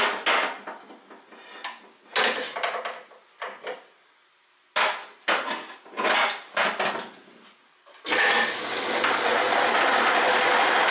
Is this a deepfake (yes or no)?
no